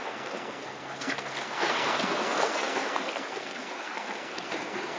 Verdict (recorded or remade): remade